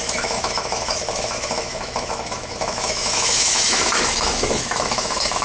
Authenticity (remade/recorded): remade